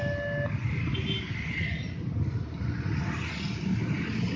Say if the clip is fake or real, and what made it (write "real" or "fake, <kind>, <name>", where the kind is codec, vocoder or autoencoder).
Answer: real